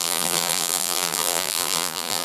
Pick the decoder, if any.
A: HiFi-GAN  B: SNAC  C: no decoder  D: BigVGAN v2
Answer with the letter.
D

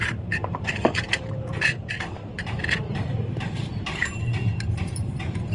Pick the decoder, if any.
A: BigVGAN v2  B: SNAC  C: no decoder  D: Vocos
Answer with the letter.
A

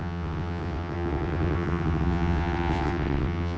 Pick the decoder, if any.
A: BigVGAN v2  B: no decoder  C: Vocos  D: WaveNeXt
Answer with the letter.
D